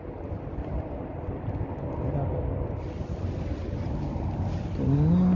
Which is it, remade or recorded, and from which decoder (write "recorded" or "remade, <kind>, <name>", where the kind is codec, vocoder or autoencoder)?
recorded